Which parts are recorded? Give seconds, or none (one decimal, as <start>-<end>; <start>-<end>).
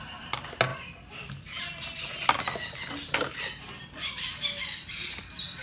0.0-5.6